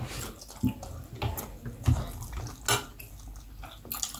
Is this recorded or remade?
recorded